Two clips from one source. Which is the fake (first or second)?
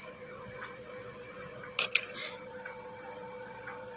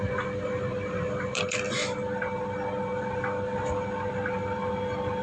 first